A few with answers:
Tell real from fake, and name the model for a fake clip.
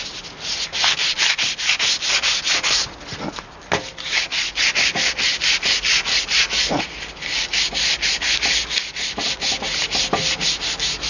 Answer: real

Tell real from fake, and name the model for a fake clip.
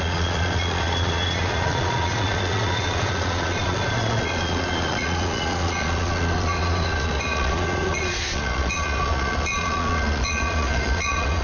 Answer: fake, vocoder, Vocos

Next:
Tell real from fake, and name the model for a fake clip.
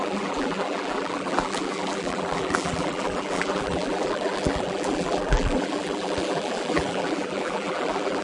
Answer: fake, vocoder, BigVGAN v2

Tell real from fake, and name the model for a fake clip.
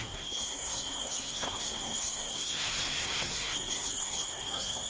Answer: fake, codec, SNAC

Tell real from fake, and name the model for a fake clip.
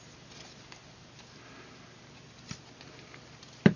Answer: real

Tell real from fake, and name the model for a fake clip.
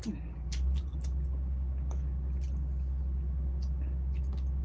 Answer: real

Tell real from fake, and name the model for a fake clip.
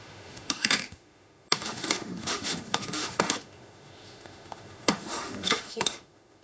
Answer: fake, autoencoder, DAC-VAE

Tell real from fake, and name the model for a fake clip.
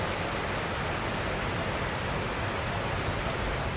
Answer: real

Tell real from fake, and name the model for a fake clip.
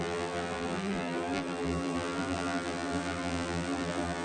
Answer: fake, vocoder, BigVGAN v2